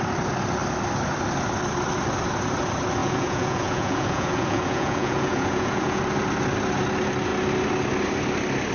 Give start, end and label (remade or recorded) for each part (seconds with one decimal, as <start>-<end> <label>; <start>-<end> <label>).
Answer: 0.0-3.0 recorded; 3.0-6.0 remade; 6.0-8.7 recorded